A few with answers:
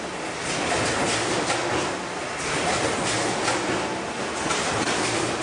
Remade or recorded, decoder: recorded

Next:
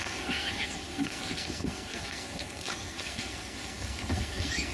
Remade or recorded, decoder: remade, codec, SNAC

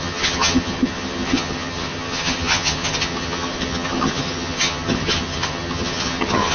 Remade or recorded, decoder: remade, vocoder, HiFi-GAN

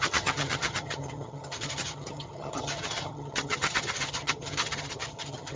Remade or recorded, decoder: remade, vocoder, HiFi-GAN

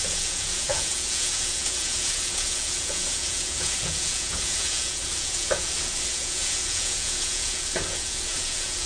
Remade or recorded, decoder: remade, vocoder, Vocos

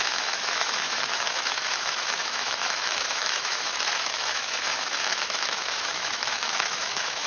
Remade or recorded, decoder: remade, autoencoder, DAC-VAE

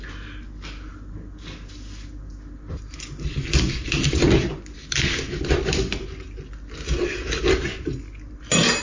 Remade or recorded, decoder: recorded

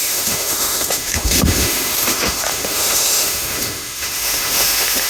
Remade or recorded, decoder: remade, autoencoder, DAC-VAE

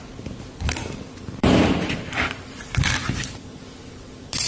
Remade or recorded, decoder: remade, vocoder, BigVGAN v2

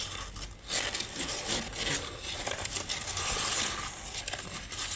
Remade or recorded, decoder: recorded